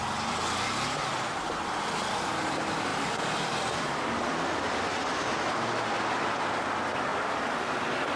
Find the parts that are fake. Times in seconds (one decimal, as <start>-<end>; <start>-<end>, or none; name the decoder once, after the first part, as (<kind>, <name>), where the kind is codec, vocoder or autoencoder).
2.9-4.0 (vocoder, BigVGAN v2)

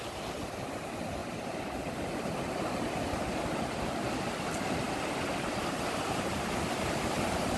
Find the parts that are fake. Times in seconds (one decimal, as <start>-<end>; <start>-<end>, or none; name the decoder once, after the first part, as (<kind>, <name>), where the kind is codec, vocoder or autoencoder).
0.0-1.2 (vocoder, BigVGAN v2); 5.6-7.6

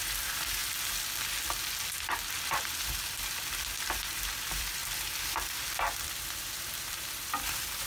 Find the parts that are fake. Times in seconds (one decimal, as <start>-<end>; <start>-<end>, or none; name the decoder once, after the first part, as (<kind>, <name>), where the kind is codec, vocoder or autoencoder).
0.0-0.6 (vocoder, BigVGAN v2); 3.8-4.8; 6.1-7.9